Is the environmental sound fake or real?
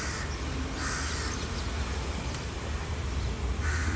real